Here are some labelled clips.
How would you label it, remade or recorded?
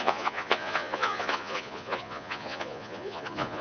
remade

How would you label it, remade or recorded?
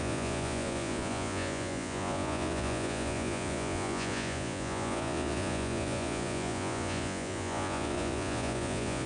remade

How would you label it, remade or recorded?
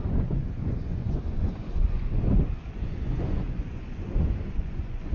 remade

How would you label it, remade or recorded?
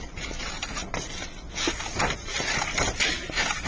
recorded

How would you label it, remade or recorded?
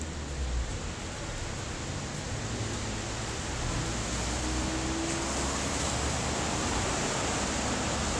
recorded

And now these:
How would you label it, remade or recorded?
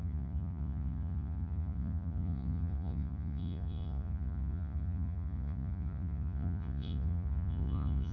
remade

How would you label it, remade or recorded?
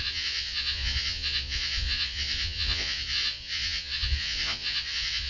remade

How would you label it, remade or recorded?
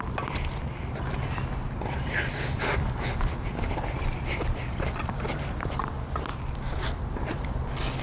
recorded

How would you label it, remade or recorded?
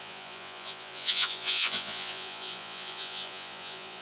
remade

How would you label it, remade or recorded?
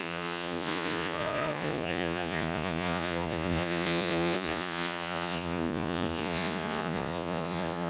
remade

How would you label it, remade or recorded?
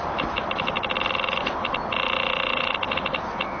recorded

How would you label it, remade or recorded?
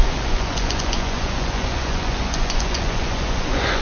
remade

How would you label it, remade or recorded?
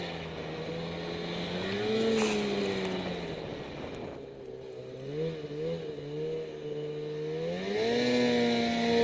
recorded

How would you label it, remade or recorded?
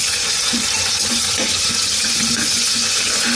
remade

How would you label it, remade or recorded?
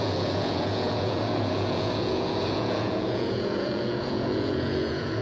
remade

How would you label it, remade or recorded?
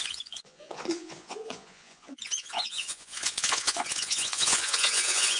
remade